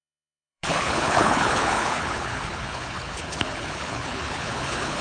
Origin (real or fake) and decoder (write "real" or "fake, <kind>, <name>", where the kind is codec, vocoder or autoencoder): fake, codec, HILCodec